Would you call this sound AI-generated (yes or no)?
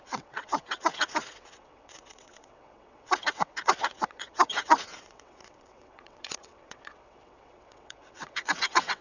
yes